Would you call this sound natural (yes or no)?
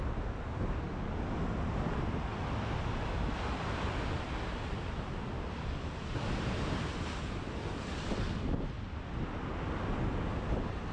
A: yes